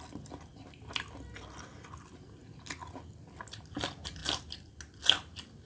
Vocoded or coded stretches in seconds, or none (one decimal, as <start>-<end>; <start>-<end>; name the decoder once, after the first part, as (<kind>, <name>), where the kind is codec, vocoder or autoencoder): none

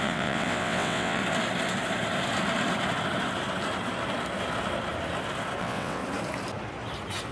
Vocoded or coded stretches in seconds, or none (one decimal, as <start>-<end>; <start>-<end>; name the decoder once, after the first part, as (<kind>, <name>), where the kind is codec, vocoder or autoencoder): 0.0-1.2 (vocoder, WaveNeXt); 5.6-6.0

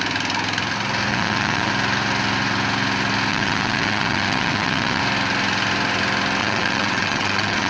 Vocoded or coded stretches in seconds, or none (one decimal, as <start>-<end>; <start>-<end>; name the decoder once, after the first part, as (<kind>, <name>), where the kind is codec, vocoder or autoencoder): 1.1-1.7 (vocoder, WaveNeXt); 3.3-5.0; 6.4-7.7

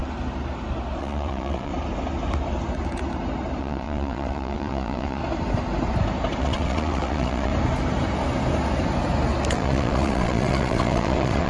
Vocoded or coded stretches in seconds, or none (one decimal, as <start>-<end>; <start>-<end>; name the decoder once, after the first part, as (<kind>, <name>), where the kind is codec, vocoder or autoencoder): 1.0-1.7 (vocoder, WaveNeXt); 3.6-5.2; 6.4-7.5; 9.5-11.5